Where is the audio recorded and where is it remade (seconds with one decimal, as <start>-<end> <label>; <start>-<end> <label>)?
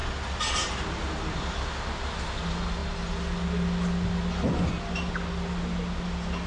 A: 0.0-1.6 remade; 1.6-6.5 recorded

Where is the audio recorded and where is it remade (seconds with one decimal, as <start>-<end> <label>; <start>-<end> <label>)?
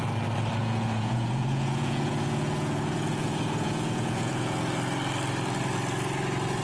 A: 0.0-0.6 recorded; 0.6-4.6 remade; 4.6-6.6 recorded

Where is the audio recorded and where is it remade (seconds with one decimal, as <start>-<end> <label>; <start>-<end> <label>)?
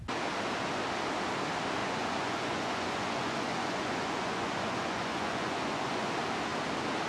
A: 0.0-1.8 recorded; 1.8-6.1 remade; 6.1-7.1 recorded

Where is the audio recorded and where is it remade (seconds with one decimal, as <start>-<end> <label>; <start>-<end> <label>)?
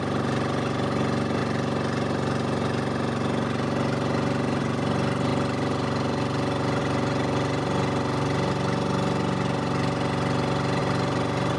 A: 0.0-10.8 recorded; 10.8-11.6 remade